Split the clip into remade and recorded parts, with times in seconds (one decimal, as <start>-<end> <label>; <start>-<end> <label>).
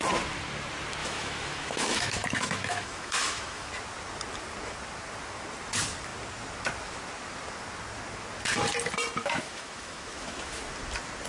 0.0-1.0 recorded; 1.0-3.7 remade; 3.7-9.2 recorded; 9.2-10.6 remade; 10.6-11.3 recorded